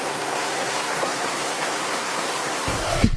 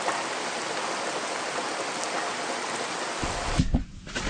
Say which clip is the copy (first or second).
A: first